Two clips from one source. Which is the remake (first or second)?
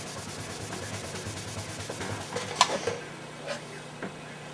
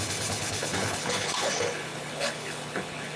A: second